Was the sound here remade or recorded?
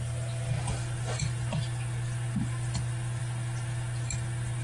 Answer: recorded